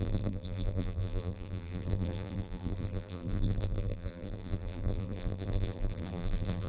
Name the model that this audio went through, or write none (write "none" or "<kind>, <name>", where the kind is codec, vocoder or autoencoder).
vocoder, BigVGAN v2